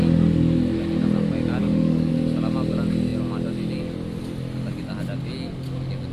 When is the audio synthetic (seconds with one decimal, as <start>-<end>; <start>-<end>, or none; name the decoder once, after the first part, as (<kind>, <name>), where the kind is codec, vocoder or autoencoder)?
1.6-2.1 (codec, DAC)